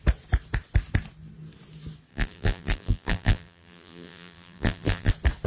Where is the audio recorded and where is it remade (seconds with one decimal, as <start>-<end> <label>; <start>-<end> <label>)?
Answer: 0.0-2.1 recorded; 2.1-5.1 remade; 5.1-5.5 recorded